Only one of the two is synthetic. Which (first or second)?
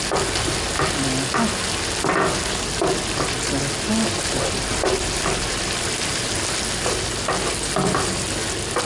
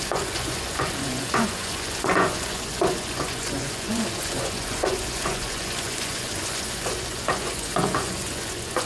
second